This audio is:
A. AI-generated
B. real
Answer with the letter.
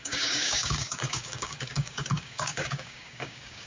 A